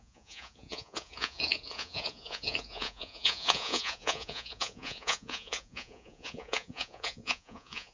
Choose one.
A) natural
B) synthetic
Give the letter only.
B